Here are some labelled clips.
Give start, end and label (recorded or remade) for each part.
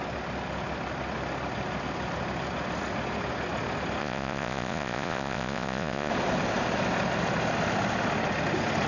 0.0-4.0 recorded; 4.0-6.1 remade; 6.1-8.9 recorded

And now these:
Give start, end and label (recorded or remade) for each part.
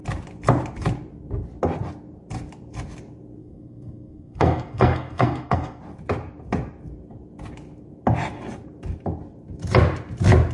0.0-3.4 recorded; 3.4-5.8 remade; 5.8-10.5 recorded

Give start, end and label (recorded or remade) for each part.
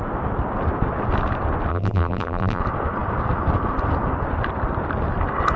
0.0-1.7 recorded; 1.7-2.6 remade; 2.6-5.6 recorded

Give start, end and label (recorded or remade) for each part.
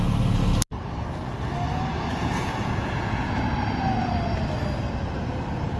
0.0-2.1 recorded; 2.1-3.3 remade; 3.3-5.8 recorded